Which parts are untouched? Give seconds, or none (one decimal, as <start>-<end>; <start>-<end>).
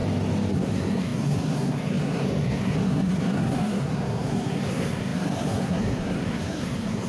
0.0-0.5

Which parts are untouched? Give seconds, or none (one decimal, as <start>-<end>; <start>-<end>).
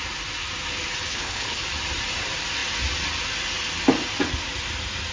0.0-1.1; 1.6-5.1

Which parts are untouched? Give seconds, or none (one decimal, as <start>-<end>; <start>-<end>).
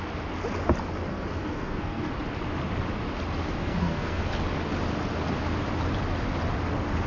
0.0-1.1; 2.1-3.6; 4.2-7.1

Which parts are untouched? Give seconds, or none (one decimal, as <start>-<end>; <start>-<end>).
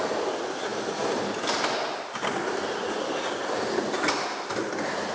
0.0-5.1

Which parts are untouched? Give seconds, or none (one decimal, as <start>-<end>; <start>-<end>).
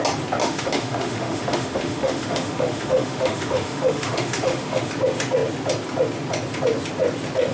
0.0-0.4; 4.9-7.5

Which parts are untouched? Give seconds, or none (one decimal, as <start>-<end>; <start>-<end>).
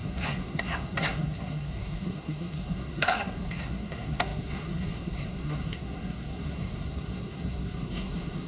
none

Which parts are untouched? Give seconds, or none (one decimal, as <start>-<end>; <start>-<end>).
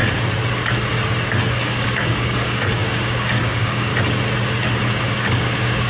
0.0-1.5; 3.9-5.0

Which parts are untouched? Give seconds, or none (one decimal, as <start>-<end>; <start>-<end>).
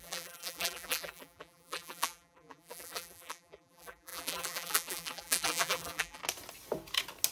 6.2-7.3